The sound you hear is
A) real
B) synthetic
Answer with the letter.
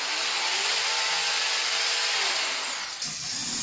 A